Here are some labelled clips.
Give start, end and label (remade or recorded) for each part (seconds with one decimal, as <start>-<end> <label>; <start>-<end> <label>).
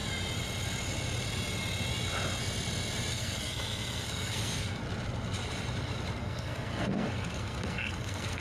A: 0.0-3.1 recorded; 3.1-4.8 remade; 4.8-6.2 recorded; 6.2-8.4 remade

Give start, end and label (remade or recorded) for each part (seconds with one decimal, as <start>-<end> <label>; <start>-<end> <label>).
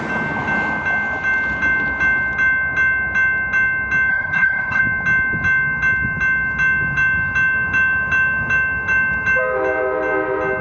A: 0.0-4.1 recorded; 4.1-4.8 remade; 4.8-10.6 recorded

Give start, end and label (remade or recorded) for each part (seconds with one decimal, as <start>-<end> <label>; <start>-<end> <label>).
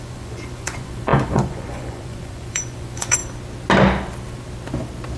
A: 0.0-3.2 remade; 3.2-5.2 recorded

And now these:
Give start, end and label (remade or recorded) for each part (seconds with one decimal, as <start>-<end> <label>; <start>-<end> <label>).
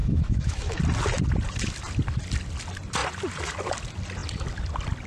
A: 0.0-0.8 remade; 0.8-5.1 recorded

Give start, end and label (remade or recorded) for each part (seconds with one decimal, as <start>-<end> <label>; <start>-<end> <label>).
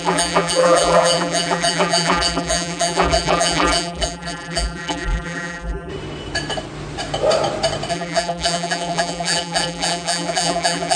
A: 0.0-5.9 remade; 5.9-7.9 recorded; 7.9-11.0 remade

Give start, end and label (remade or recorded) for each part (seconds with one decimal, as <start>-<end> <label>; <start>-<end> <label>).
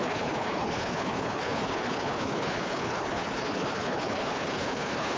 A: 0.0-5.2 remade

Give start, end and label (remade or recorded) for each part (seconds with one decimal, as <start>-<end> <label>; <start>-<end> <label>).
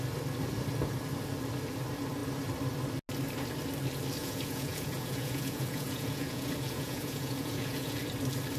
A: 0.0-4.2 recorded; 4.2-8.0 remade; 8.0-8.6 recorded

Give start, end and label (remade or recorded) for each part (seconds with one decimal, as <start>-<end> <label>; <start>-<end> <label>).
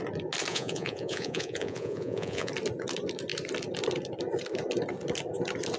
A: 0.0-0.5 recorded; 0.5-2.5 remade; 2.5-5.8 recorded